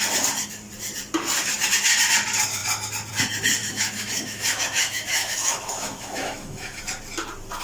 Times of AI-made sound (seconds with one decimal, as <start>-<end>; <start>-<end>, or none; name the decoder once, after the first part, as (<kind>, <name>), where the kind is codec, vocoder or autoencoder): 3.6-6.8 (autoencoder, DAC-VAE)

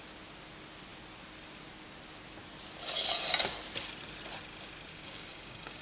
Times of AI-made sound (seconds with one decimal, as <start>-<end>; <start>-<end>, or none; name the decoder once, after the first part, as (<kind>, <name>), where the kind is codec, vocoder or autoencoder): 4.9-5.8 (codec, DAC)

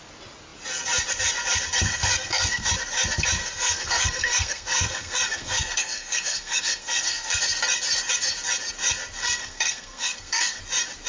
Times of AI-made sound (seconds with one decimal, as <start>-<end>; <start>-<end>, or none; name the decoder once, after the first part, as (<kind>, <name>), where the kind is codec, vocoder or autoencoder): 1.9-2.7 (codec, SNAC); 3.4-7.4; 9.2-10.6